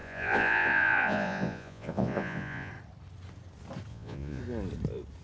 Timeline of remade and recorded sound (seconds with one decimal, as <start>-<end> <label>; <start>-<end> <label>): 0.0-2.7 remade; 2.7-3.9 recorded; 3.9-4.4 remade; 4.4-5.2 recorded